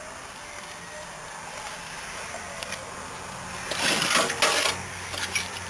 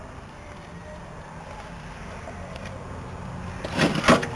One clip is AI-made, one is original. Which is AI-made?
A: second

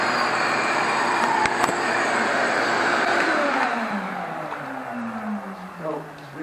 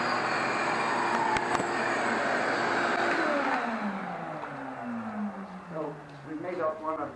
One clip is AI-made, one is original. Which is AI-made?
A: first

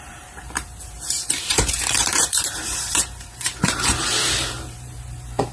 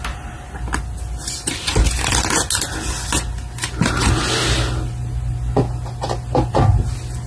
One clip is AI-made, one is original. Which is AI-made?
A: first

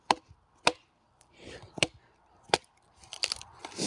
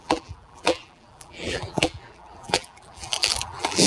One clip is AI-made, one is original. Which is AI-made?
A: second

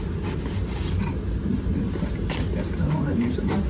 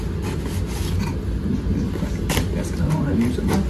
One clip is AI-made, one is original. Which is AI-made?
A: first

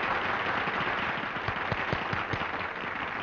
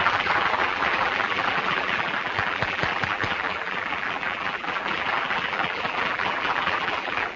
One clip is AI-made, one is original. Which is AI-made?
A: second